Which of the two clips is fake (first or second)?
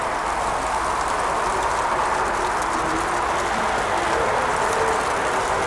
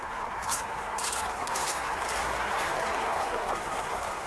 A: second